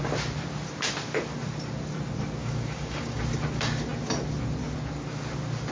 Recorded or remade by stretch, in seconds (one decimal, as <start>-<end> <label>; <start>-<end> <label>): 0.0-2.4 recorded; 2.4-3.2 remade; 3.2-5.7 recorded